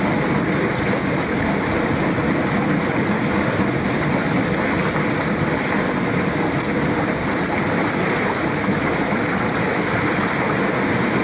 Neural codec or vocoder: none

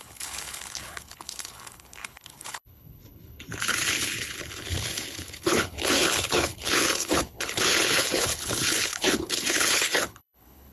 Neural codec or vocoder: codec, HILCodec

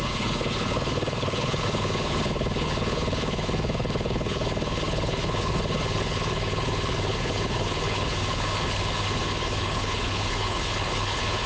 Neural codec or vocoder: codec, HILCodec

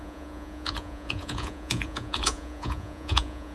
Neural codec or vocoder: vocoder, Vocos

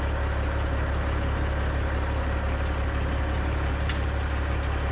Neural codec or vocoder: none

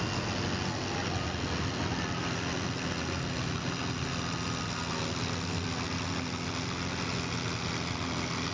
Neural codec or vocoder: none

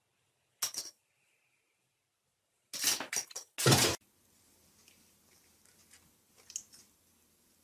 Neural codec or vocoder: none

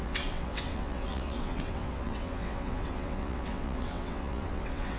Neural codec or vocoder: vocoder, WaveNeXt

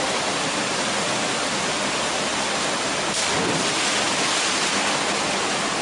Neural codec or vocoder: none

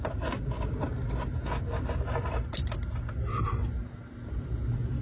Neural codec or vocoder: none